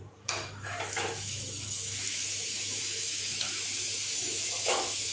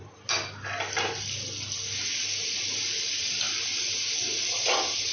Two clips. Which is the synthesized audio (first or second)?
first